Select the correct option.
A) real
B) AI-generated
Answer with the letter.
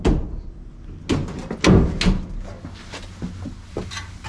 A